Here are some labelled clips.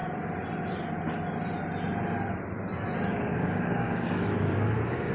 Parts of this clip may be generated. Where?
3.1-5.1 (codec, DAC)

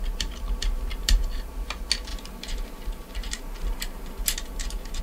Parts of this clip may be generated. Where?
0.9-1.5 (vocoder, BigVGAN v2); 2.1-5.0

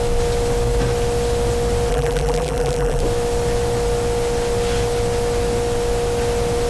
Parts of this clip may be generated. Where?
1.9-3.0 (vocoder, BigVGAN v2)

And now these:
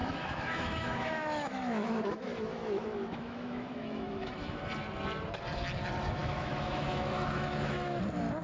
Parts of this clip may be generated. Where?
0.0-4.6 (autoencoder, DAC-VAE); 6.2-8.0